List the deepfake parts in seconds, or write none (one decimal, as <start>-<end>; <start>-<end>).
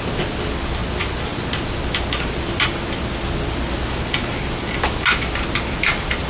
none